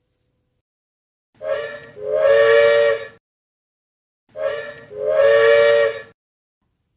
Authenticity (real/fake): real